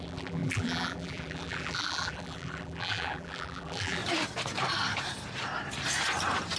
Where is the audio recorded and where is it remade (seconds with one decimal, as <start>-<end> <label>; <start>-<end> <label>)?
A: 0.0-4.0 remade; 4.0-6.6 recorded